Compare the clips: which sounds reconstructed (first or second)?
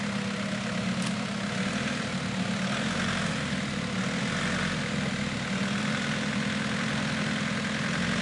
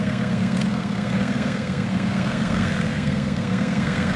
second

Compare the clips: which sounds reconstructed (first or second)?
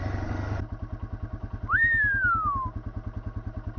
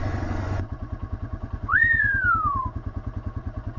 second